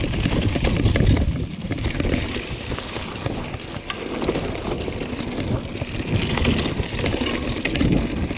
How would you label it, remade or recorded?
recorded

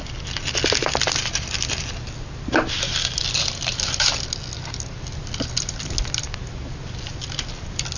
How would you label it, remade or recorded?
recorded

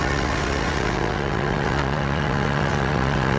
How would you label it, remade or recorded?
remade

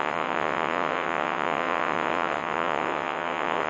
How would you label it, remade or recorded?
remade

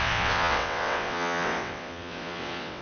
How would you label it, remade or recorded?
remade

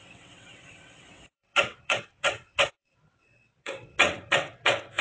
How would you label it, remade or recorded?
remade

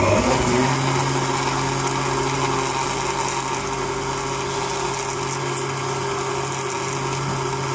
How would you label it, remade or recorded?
recorded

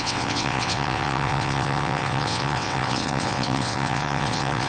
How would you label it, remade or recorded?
remade